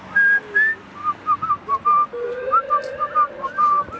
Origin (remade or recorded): recorded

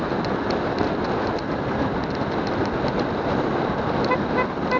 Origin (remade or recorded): recorded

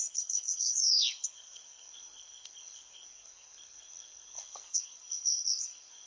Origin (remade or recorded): remade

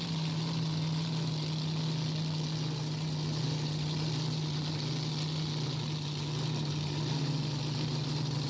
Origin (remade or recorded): recorded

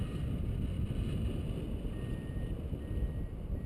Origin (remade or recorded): recorded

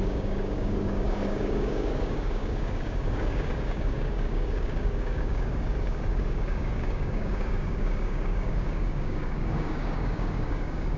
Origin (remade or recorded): remade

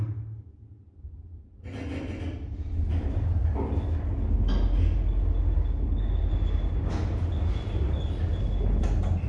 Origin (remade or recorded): recorded